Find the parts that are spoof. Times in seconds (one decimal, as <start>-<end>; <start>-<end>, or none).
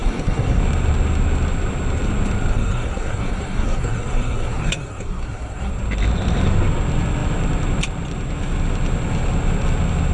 0.0-0.6; 2.5-5.7